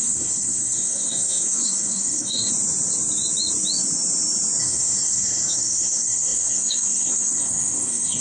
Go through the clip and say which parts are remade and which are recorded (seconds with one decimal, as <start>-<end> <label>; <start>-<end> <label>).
0.0-2.5 remade; 2.5-4.6 recorded; 4.6-8.2 remade